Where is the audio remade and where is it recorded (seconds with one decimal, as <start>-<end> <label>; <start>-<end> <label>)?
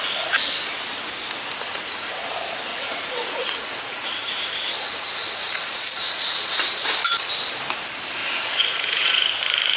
0.0-1.7 recorded; 1.7-2.3 remade; 2.3-2.7 recorded; 2.7-6.6 remade; 6.6-8.2 recorded; 8.2-9.2 remade; 9.2-9.8 recorded